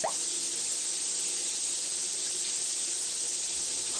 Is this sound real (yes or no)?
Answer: yes